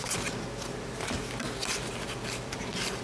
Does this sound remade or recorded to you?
recorded